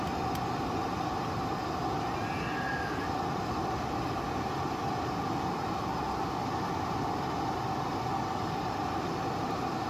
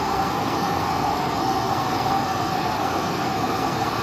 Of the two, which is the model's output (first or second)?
second